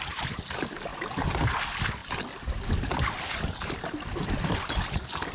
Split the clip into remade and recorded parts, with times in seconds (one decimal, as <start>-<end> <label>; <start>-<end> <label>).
0.0-0.9 remade; 0.9-1.6 recorded; 1.6-2.0 remade; 2.0-3.3 recorded; 3.3-5.3 remade